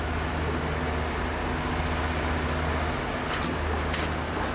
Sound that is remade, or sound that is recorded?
recorded